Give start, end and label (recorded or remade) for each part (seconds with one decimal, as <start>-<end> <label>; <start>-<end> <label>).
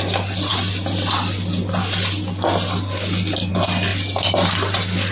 0.0-5.1 recorded